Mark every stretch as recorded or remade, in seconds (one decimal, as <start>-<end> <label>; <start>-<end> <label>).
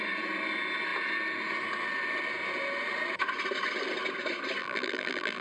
0.0-4.6 recorded; 4.6-5.4 remade